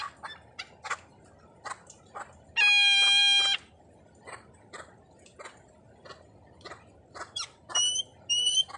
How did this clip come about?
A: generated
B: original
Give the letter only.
B